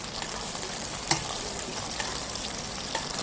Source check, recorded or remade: recorded